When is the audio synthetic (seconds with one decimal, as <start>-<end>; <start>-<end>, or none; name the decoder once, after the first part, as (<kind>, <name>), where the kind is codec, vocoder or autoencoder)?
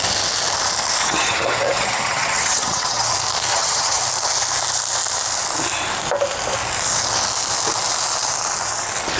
1.0-3.1 (vocoder, HiFi-GAN); 3.5-4.0